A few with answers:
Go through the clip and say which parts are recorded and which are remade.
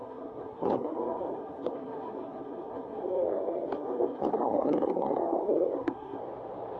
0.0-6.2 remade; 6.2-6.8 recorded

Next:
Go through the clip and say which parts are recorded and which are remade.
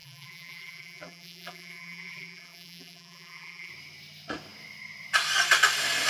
0.0-3.7 remade; 3.7-6.1 recorded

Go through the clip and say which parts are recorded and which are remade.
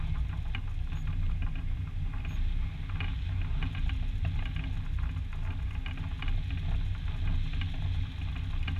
0.0-8.8 recorded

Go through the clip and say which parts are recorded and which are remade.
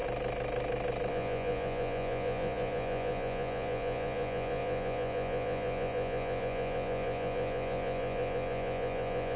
0.0-1.1 recorded; 1.1-9.4 remade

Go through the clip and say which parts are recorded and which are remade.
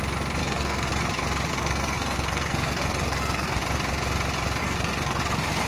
0.0-0.4 recorded; 0.4-0.9 remade; 0.9-1.5 recorded; 1.5-3.6 remade; 3.6-4.6 recorded; 4.6-5.2 remade; 5.2-5.7 recorded